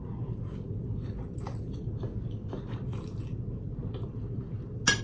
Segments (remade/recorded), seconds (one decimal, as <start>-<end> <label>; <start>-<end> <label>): 0.0-5.0 recorded